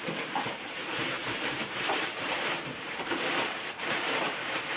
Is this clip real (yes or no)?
no